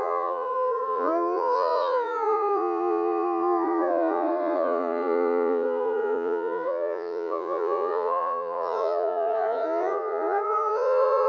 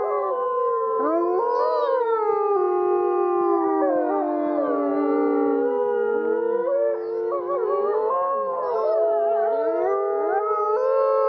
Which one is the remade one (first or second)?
first